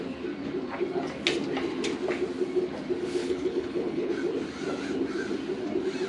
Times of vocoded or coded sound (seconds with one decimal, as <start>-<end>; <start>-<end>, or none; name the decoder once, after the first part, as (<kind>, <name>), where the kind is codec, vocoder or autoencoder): 3.2-4.1 (codec, HILCodec)